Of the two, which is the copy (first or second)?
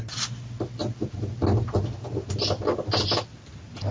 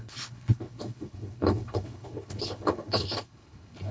second